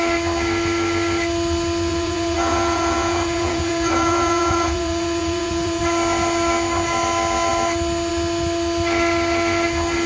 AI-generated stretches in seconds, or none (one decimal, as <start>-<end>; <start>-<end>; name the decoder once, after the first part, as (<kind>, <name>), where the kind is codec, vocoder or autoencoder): 1.9-5.8 (vocoder, Vocos)